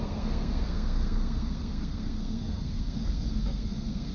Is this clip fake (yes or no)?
yes